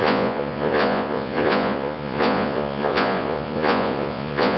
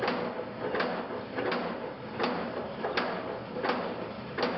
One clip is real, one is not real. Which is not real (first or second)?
first